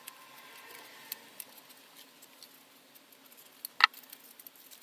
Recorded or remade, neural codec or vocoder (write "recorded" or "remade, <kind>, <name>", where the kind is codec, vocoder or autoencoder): recorded